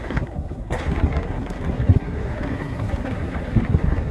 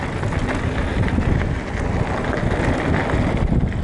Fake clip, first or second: first